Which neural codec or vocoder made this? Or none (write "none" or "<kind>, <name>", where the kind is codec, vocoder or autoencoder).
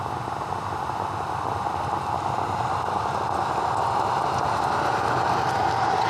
none